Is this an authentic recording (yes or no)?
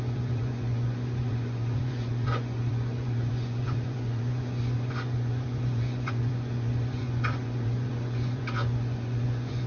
no